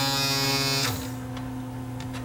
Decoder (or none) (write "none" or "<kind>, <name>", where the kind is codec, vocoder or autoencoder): none